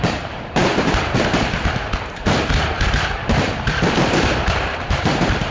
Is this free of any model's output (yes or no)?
no